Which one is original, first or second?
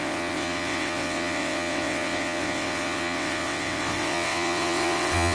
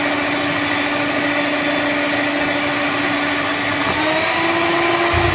second